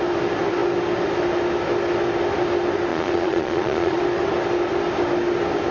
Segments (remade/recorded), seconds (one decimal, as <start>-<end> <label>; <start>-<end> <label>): 0.0-2.9 recorded; 2.9-4.0 remade; 4.0-5.7 recorded